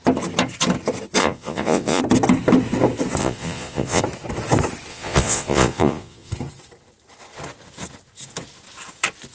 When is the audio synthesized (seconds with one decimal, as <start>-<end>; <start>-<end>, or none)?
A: 1.2-2.0; 3.2-4.0; 4.9-6.3